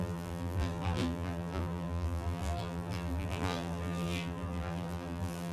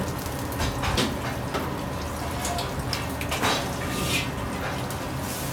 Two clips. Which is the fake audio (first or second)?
first